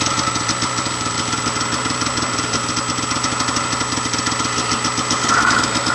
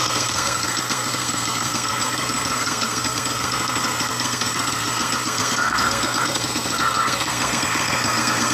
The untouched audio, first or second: first